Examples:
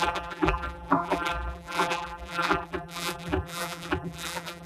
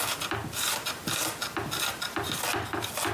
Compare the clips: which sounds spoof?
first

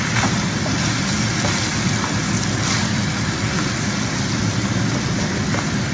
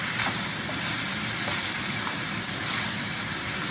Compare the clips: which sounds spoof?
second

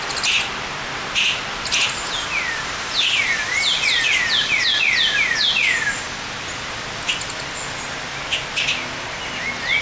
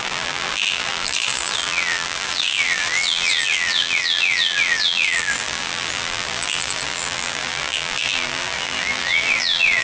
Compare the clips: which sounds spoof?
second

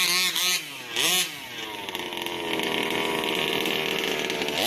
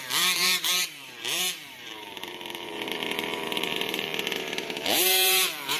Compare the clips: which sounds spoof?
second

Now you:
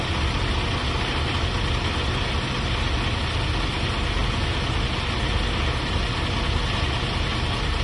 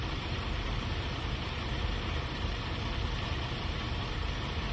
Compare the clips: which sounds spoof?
second